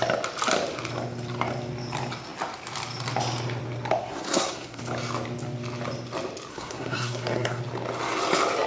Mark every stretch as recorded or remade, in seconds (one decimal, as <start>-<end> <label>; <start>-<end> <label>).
0.0-4.0 recorded; 4.0-4.8 remade; 4.8-6.5 recorded; 6.5-7.6 remade; 7.6-8.7 recorded